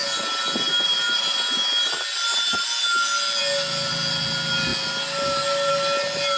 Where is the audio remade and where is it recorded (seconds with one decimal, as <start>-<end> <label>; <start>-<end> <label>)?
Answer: 0.0-6.4 recorded

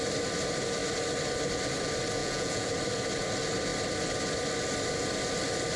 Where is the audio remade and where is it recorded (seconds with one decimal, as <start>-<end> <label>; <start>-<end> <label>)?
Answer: 0.0-2.2 recorded; 2.2-2.7 remade; 2.7-5.8 recorded

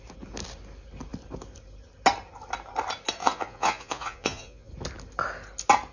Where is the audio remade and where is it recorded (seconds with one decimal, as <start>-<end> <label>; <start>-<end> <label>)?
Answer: 0.0-3.2 recorded; 3.2-4.7 remade; 4.7-5.9 recorded

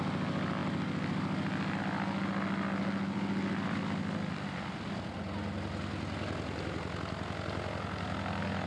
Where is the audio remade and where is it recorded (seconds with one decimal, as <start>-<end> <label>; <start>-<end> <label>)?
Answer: 0.0-8.7 recorded

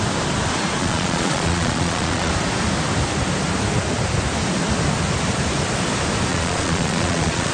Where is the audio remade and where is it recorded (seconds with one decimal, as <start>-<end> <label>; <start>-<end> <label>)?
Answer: 0.0-0.8 recorded; 0.8-2.3 remade; 2.3-6.3 recorded; 6.3-7.5 remade